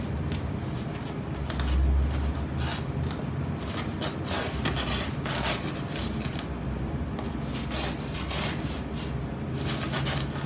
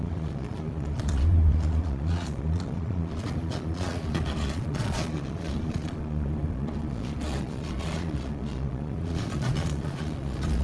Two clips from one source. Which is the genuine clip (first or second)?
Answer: first